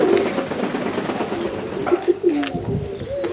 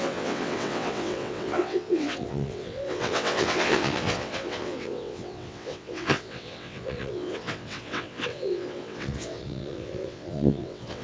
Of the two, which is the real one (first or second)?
first